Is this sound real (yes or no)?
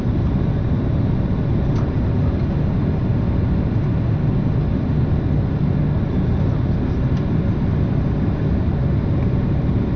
yes